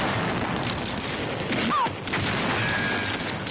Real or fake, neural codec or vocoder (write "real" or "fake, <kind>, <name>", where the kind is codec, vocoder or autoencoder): real